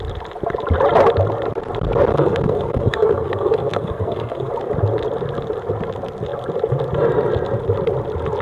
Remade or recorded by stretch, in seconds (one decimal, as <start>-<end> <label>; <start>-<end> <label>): 0.0-2.1 recorded; 2.1-4.5 remade; 4.5-8.4 recorded